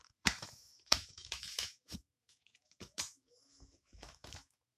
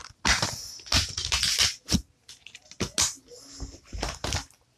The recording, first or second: second